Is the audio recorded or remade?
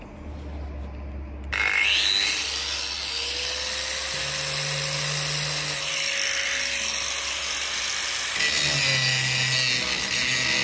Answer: recorded